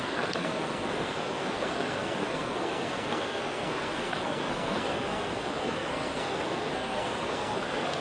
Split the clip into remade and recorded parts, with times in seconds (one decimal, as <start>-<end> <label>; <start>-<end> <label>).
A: 0.0-8.0 remade